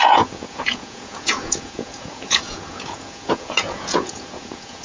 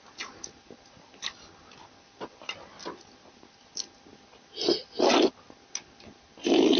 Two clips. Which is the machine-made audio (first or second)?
first